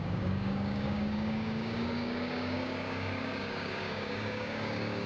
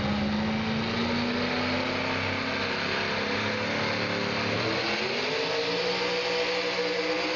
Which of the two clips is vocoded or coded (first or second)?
first